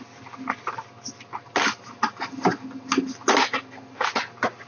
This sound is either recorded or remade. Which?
recorded